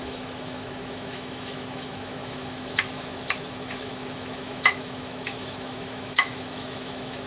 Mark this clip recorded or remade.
remade